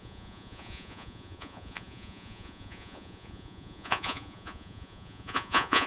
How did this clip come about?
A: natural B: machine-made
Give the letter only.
B